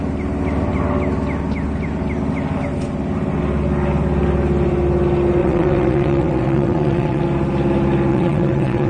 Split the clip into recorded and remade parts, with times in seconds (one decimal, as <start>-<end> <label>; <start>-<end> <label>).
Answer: 0.0-5.4 recorded; 5.4-7.2 remade; 7.2-8.1 recorded; 8.1-8.9 remade

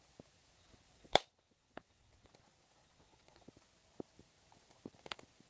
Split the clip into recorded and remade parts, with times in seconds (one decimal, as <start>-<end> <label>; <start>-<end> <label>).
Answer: 0.0-0.6 recorded; 0.6-2.3 remade; 2.3-2.8 recorded; 2.8-3.5 remade; 3.5-5.5 recorded

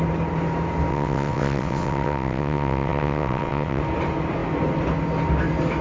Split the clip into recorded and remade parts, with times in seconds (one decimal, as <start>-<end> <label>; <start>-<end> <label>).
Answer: 0.0-0.9 recorded; 0.9-3.8 remade; 3.8-5.8 recorded